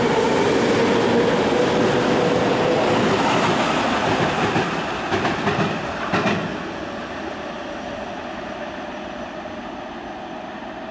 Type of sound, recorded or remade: recorded